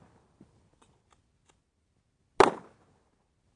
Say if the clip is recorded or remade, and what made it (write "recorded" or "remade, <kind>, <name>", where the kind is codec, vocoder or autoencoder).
recorded